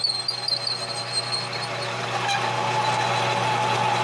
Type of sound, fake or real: real